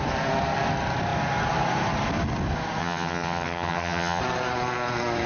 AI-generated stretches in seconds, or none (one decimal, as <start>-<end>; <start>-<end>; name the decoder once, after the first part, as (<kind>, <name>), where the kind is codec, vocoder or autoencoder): 2.8-4.2 (vocoder, HiFi-GAN)